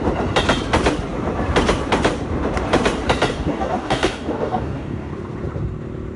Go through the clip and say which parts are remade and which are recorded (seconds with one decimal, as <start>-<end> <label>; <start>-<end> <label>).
0.0-3.3 recorded; 3.3-5.1 remade; 5.1-6.2 recorded